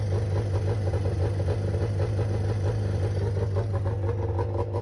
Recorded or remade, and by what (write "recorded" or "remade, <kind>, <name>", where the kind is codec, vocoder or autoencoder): recorded